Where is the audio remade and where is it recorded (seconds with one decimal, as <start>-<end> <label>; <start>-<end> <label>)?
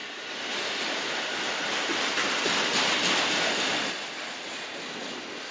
0.0-5.5 recorded